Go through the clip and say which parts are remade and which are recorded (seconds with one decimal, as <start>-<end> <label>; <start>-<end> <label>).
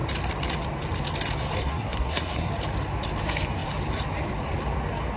0.0-1.6 recorded; 1.6-2.5 remade; 2.5-5.2 recorded